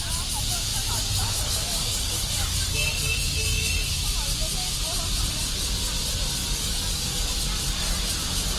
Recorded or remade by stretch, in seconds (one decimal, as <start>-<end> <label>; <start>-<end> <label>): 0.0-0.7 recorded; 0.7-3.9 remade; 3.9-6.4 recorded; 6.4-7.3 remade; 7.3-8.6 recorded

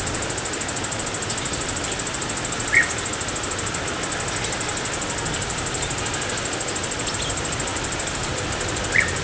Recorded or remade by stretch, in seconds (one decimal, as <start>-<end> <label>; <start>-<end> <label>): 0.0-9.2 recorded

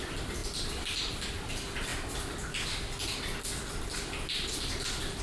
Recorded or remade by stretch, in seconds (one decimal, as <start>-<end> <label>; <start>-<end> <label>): 0.0-5.2 recorded

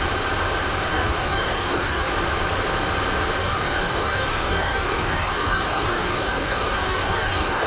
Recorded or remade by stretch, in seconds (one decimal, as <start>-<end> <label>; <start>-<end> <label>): 0.0-0.9 recorded; 0.9-2.1 remade; 2.1-3.4 recorded; 3.4-7.7 remade

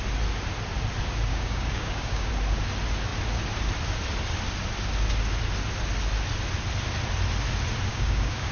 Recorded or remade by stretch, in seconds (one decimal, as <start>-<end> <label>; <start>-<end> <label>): 0.0-1.3 recorded; 1.3-2.3 remade; 2.3-7.9 recorded; 7.9-8.5 remade

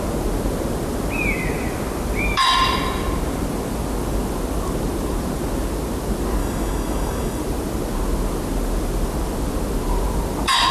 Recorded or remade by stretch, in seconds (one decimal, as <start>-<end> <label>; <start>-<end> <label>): 0.0-6.4 recorded; 6.4-7.4 remade; 7.4-10.7 recorded